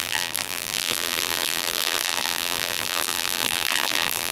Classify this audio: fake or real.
fake